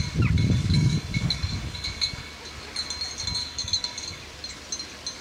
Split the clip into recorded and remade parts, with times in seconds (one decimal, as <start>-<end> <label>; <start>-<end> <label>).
0.0-0.6 recorded; 0.6-2.3 remade; 2.3-3.4 recorded; 3.4-4.2 remade; 4.2-5.2 recorded